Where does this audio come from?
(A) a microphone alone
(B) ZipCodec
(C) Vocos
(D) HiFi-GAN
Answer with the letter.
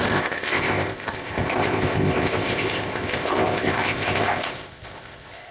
B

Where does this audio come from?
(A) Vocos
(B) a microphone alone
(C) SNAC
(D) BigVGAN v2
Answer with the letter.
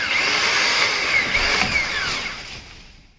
B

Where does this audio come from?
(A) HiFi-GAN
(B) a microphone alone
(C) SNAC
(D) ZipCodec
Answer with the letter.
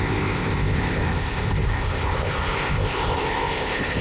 D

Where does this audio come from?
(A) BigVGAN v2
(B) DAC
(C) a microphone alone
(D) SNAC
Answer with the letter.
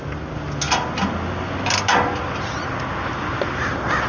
C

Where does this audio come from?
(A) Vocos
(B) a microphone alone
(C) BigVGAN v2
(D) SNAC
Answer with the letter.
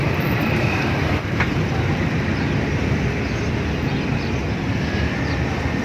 B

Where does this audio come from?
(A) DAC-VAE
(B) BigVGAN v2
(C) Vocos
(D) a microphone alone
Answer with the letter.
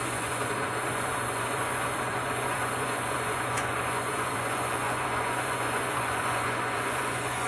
C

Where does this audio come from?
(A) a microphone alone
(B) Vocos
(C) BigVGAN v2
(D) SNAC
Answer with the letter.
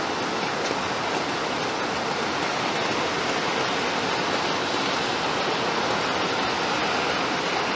A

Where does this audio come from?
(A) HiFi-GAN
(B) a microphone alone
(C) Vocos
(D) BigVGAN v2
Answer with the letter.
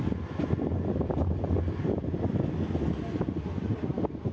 B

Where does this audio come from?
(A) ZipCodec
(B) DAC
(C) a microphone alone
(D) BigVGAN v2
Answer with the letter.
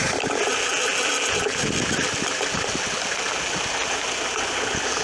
C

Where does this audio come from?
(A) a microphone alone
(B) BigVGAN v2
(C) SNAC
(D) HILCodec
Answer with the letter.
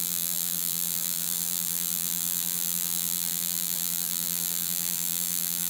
B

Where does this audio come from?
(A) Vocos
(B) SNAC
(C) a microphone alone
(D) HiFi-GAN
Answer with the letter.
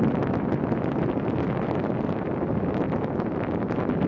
C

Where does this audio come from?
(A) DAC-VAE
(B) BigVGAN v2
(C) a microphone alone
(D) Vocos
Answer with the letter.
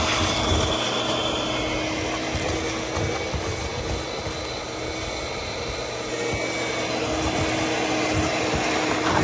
C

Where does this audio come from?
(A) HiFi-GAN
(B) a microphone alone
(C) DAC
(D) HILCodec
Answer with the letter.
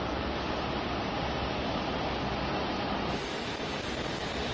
B